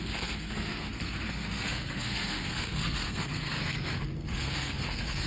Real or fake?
fake